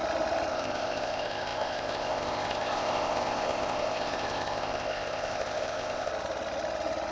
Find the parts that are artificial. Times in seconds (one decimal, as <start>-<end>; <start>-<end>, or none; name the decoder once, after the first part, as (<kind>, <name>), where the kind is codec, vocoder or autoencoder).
0.5-6.1 (codec, ZipCodec)